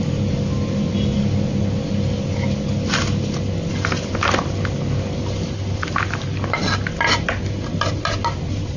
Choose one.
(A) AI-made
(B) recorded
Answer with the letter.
B